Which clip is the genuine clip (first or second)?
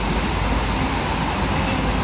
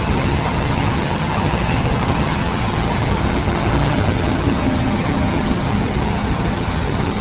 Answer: first